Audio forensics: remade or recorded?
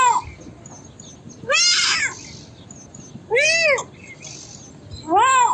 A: recorded